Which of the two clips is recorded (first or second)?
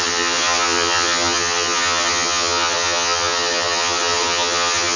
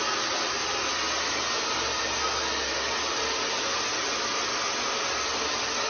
second